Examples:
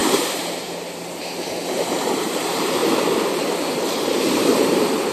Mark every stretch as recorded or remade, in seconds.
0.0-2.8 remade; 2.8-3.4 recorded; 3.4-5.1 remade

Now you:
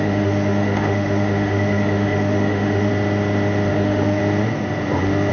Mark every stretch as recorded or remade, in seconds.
0.0-2.9 remade; 2.9-3.7 recorded; 3.7-4.2 remade; 4.2-5.3 recorded

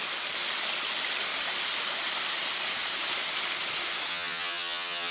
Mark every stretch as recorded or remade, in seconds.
0.0-4.1 recorded; 4.1-5.1 remade

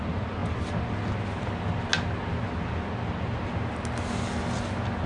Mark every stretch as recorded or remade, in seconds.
0.0-5.1 recorded

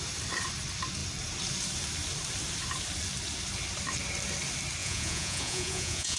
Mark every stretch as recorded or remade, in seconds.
0.0-4.8 recorded; 4.8-6.2 remade

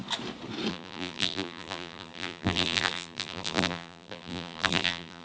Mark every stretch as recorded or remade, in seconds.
0.0-0.7 recorded; 0.7-5.2 remade